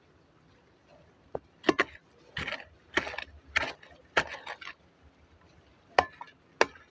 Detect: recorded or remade recorded